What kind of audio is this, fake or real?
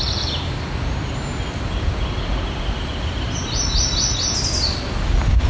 real